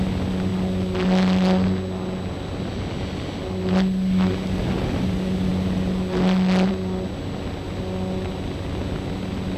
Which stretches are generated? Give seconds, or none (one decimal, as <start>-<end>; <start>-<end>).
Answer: none